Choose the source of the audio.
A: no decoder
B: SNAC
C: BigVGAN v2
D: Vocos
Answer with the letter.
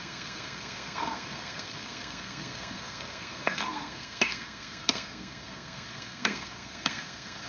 B